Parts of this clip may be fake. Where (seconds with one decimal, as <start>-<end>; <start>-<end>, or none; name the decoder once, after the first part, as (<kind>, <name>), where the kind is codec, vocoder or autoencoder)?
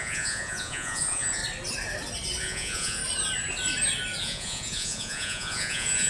0.0-1.4 (vocoder, Vocos); 2.4-3.0; 4.2-6.1